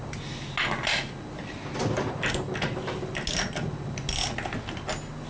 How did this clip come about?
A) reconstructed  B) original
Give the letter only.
B